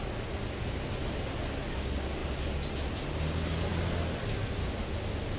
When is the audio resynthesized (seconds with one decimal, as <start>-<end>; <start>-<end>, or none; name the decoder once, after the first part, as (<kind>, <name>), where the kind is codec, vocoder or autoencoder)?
none